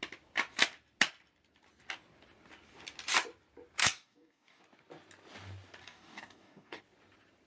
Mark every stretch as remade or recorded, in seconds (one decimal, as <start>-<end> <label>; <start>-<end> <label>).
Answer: 0.0-3.8 recorded; 3.8-4.6 remade; 4.6-5.8 recorded; 5.8-6.8 remade; 6.8-7.5 recorded

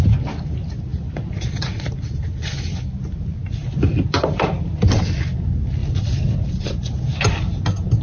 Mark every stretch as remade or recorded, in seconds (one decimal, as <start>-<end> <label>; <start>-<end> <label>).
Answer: 0.0-0.9 recorded; 0.9-1.9 remade; 1.9-3.9 recorded; 3.9-4.5 remade; 4.5-5.8 recorded; 5.8-6.6 remade; 6.6-8.0 recorded